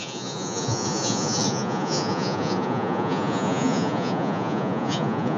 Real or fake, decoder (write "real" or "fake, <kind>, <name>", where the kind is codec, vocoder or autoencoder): fake, vocoder, Vocos